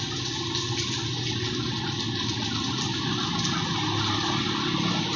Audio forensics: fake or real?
real